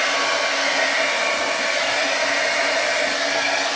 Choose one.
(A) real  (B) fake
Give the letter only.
A